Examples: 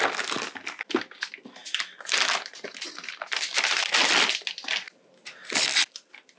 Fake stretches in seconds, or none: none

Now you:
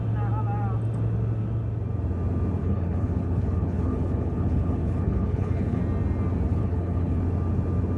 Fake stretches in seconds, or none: 2.6-5.8; 6.5-7.2